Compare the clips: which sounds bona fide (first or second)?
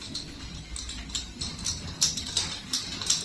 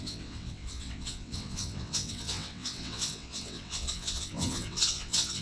first